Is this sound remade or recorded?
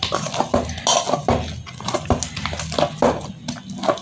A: recorded